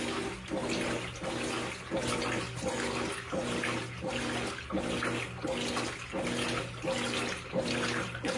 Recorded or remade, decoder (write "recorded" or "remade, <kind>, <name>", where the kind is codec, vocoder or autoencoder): recorded